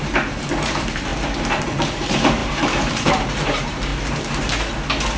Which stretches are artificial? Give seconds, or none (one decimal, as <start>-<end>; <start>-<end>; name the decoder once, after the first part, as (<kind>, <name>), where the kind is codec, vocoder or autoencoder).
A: 0.0-1.1 (vocoder, BigVGAN v2); 1.6-3.9